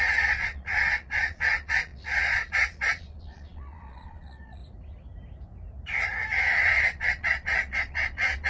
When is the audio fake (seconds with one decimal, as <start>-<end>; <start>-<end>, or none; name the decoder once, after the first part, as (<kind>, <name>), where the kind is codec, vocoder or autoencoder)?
0.0-4.6 (vocoder, Vocos); 6.4-8.5